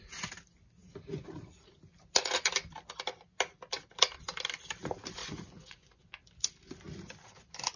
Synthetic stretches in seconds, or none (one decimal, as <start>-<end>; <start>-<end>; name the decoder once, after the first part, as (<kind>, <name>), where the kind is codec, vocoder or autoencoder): 5.2-6.0 (vocoder, Vocos)